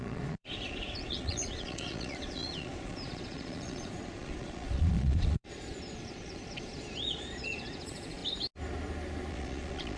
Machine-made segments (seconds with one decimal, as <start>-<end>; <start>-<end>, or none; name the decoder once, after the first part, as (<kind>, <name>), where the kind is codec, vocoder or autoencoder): 0.0-8.2 (vocoder, Vocos); 9.3-10.0